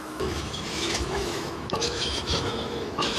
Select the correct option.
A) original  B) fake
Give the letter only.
B